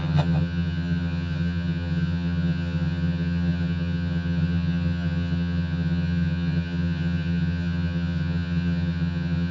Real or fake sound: fake